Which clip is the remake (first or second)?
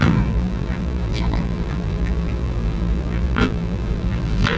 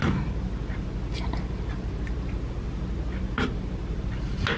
first